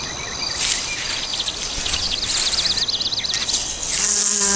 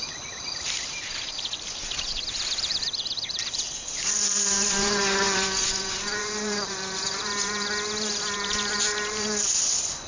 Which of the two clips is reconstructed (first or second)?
second